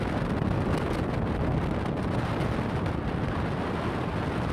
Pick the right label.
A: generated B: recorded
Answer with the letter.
B